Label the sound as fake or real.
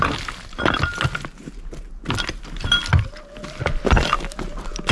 real